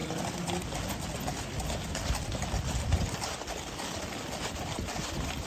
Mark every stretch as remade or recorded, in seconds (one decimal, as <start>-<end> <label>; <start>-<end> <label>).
0.0-5.5 recorded